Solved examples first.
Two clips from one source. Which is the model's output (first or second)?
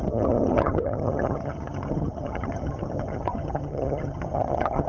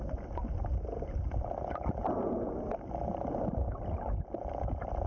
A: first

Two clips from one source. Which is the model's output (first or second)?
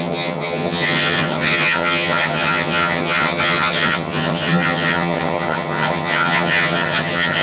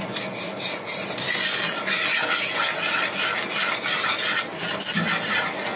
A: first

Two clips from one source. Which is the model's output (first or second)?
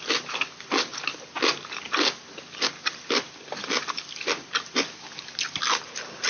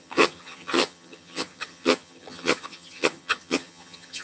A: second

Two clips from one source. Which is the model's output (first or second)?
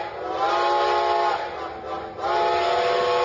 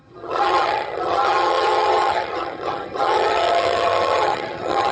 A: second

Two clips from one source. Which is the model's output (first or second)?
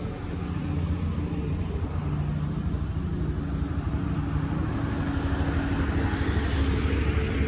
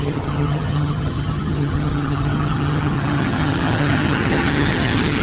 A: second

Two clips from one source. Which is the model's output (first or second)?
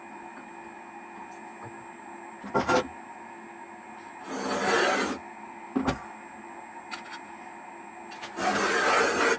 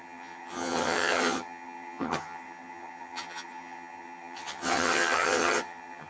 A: second